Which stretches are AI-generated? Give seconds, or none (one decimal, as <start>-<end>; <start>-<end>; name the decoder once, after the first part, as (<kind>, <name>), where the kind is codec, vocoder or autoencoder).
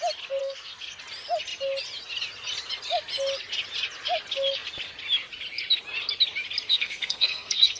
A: 0.4-1.0 (codec, SNAC); 6.7-7.8